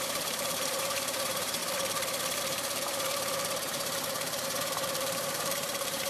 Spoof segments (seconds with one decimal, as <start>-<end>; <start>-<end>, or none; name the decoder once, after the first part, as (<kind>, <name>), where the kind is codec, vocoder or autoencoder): 0.0-1.6 (vocoder, BigVGAN v2); 2.4-6.1

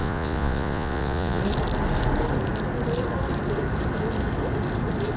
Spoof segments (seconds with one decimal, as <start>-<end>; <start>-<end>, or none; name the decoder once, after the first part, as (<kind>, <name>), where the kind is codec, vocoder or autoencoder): 0.0-1.4 (vocoder, Vocos)